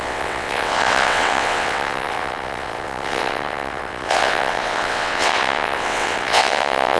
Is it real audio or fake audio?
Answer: fake